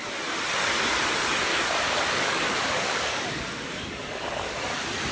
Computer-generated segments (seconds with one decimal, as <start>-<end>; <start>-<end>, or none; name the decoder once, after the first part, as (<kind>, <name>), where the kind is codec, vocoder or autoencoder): 1.5-4.6 (codec, DAC)